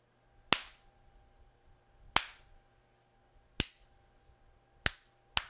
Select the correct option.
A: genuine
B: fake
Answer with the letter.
A